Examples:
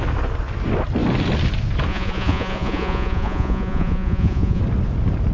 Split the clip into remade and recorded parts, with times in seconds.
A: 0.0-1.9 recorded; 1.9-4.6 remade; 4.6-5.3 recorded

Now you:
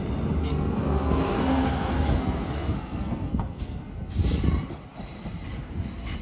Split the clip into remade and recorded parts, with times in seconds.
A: 0.0-0.4 recorded; 0.4-4.1 remade; 4.1-6.2 recorded

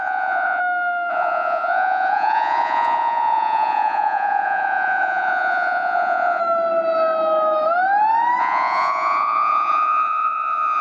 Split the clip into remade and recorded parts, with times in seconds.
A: 0.0-0.6 remade; 0.6-1.1 recorded; 1.1-6.4 remade; 6.4-8.4 recorded; 8.4-10.8 remade

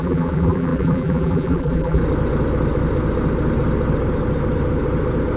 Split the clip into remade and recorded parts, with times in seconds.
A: 0.0-2.0 remade; 2.0-5.4 recorded

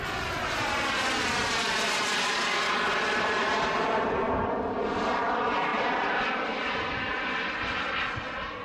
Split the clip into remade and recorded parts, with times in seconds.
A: 0.0-5.7 recorded; 5.7-6.9 remade; 6.9-8.6 recorded